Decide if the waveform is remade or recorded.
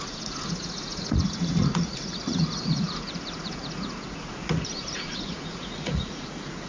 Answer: remade